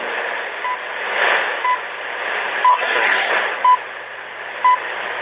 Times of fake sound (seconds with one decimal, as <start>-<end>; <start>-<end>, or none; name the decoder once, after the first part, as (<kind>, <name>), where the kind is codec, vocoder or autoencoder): 2.7-3.3 (codec, SNAC)